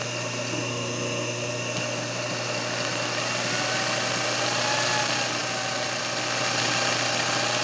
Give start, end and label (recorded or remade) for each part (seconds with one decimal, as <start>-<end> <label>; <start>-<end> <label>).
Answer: 0.0-7.6 recorded